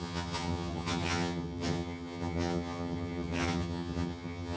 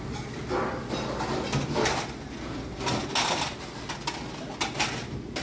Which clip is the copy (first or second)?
first